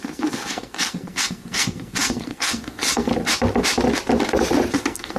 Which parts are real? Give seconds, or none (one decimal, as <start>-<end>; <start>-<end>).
3.1-4.7